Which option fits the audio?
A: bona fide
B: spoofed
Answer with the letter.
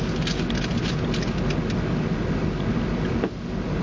A